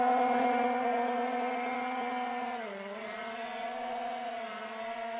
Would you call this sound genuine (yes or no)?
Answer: no